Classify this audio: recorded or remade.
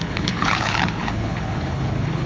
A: remade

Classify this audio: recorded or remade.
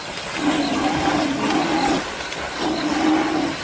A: recorded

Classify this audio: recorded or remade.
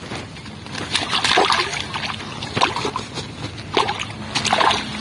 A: recorded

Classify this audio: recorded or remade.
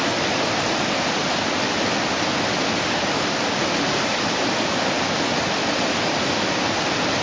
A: recorded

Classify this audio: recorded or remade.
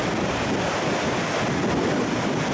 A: recorded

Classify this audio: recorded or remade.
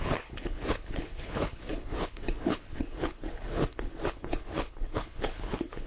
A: remade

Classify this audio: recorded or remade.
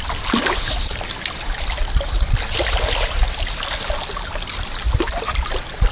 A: recorded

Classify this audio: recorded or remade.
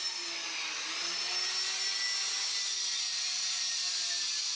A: recorded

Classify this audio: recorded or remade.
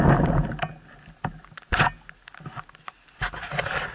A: recorded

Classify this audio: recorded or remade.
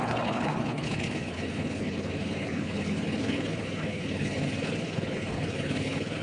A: remade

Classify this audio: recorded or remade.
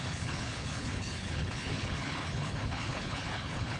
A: remade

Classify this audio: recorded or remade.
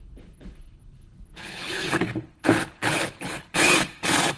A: remade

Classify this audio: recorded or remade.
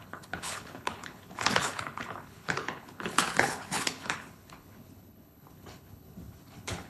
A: remade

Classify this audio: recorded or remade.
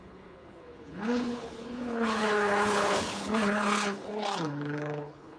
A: remade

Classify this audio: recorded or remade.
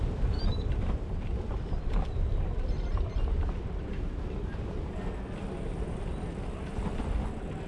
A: recorded